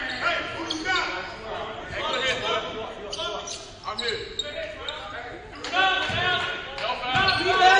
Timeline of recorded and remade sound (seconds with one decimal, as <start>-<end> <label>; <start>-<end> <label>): 0.0-7.8 recorded

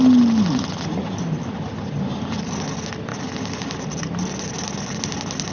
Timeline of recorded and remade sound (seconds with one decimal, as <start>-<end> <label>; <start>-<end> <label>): 0.0-3.1 recorded; 3.1-4.2 remade; 4.2-5.5 recorded

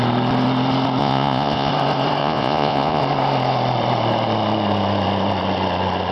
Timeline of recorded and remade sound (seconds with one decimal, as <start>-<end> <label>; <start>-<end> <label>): 0.0-1.0 recorded; 1.0-1.7 remade; 1.7-2.2 recorded; 2.2-3.0 remade; 3.0-6.1 recorded

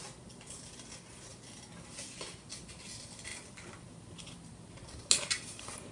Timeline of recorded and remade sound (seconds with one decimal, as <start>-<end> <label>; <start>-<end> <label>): 0.0-5.9 recorded

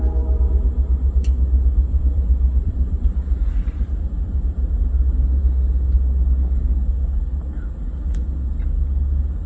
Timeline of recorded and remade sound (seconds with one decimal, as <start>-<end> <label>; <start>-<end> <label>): 0.0-1.9 recorded; 1.9-4.7 remade; 4.7-9.5 recorded